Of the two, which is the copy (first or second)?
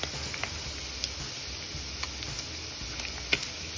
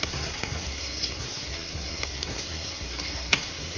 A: second